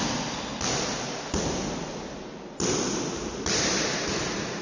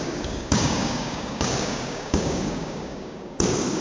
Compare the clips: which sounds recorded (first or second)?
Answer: first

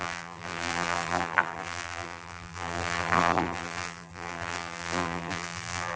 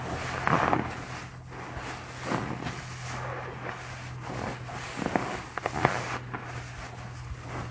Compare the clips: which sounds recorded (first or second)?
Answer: second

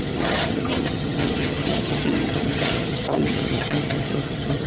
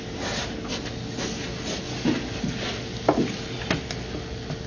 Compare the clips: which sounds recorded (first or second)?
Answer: second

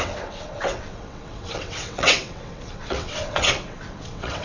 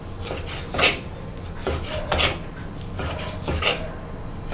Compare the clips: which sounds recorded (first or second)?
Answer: second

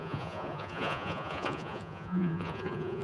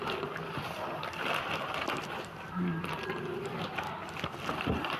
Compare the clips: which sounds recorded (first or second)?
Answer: second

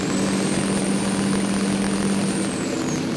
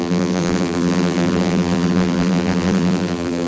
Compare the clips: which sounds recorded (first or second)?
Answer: first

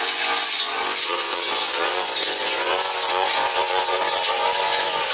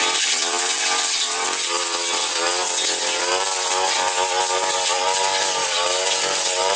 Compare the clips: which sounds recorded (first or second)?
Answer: second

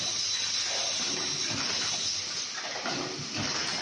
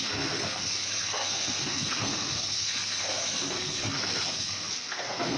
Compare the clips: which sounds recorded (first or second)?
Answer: first